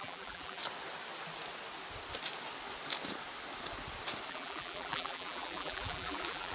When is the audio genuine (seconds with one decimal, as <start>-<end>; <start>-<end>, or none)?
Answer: 0.6-4.3